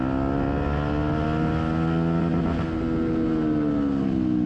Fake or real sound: real